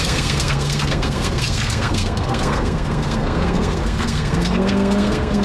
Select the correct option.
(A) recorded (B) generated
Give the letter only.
B